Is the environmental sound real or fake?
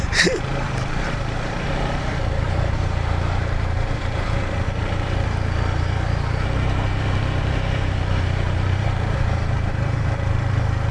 fake